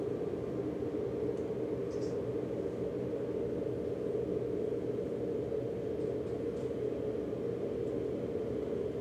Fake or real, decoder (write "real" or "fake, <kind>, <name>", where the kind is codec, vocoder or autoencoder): real